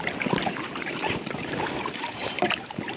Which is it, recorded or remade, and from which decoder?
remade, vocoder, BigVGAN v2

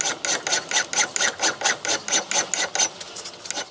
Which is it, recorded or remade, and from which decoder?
recorded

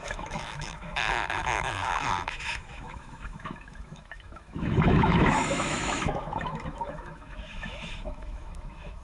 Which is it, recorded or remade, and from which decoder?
remade, autoencoder, DAC-VAE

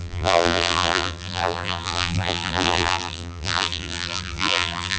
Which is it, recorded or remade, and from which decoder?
remade, vocoder, BigVGAN v2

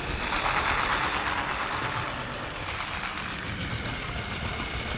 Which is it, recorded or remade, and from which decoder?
recorded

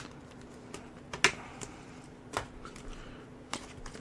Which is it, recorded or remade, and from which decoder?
recorded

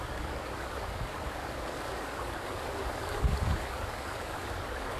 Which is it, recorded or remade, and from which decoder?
remade, codec, DAC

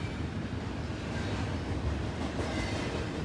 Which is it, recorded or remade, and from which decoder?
recorded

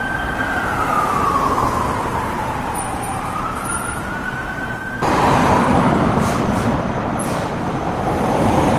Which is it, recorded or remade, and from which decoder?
remade, vocoder, BigVGAN v2